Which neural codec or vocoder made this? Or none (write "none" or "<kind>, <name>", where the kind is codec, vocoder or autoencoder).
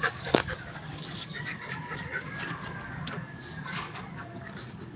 codec, DAC